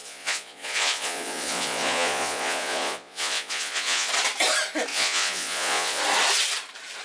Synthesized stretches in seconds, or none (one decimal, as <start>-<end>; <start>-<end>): 0.0-4.1; 4.9-6.0